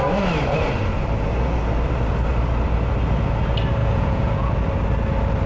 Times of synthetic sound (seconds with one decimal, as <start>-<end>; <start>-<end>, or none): 3.8-4.5